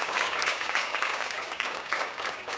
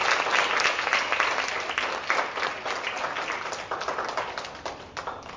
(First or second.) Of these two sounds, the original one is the second